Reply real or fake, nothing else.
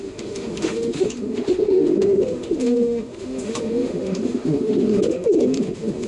fake